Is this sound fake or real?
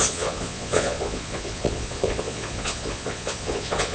fake